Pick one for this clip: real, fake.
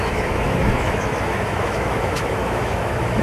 fake